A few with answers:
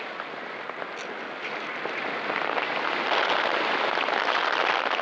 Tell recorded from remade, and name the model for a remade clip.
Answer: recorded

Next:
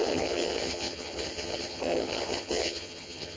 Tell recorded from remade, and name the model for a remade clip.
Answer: remade, vocoder, HiFi-GAN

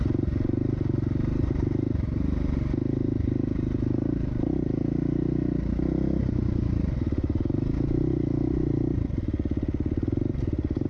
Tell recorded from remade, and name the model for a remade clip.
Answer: recorded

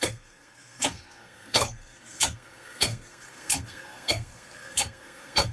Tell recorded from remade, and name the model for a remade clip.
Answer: remade, codec, SNAC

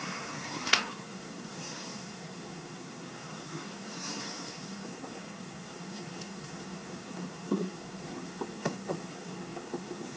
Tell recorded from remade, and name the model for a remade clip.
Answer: remade, codec, SNAC